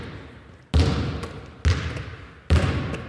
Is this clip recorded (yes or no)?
yes